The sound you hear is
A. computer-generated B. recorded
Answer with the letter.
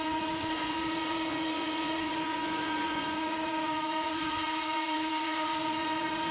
A